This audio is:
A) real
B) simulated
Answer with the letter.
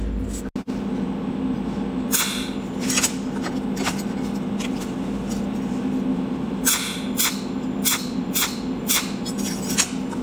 A